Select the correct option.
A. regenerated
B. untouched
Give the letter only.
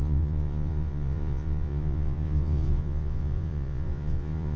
A